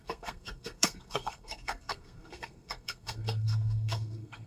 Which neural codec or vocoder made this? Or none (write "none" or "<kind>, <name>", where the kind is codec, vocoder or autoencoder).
codec, SNAC